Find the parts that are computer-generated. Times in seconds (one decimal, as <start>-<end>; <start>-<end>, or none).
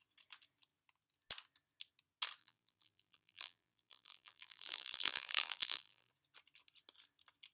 2.4-6.1